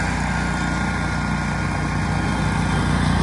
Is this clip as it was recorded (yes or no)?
yes